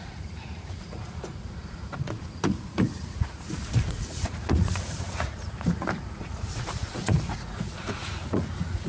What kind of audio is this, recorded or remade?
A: remade